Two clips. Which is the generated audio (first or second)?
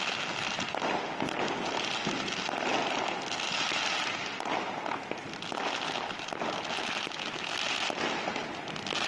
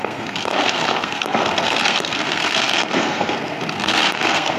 second